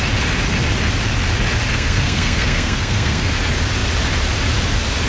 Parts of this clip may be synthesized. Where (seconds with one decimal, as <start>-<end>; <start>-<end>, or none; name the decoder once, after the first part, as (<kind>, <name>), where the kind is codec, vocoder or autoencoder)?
1.7-3.3 (codec, SNAC)